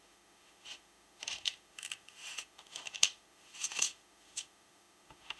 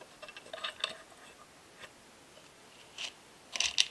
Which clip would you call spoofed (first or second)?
first